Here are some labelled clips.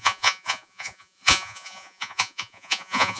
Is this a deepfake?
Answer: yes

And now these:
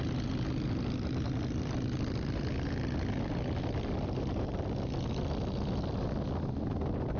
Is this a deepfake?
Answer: no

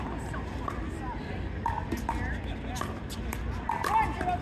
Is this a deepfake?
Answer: no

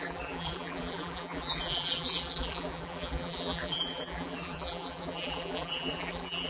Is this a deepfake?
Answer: yes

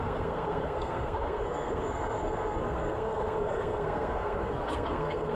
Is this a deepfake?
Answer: yes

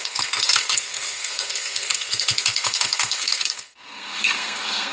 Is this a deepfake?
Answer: yes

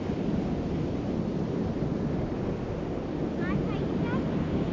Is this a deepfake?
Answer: no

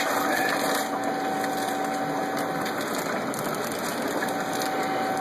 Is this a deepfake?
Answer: no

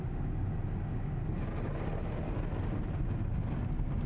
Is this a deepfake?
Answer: no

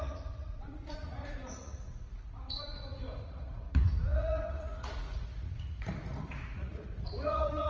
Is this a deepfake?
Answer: yes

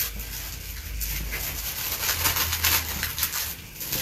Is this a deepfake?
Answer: no